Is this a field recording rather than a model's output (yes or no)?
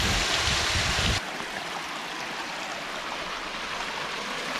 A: yes